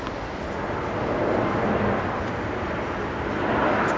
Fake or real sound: real